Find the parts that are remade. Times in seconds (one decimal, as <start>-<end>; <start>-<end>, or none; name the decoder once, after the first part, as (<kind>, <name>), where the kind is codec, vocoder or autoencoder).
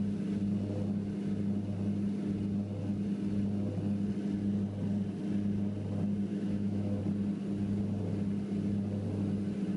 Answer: 6.3-7.0 (autoencoder, DAC-VAE)